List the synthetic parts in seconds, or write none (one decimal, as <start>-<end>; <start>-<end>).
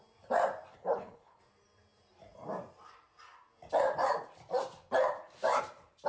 0.7-1.4